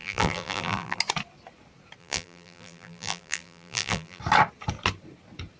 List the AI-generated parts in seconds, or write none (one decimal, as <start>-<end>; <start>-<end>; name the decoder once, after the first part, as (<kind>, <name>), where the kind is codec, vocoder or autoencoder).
0.0-1.0 (vocoder, BigVGAN v2); 2.0-4.2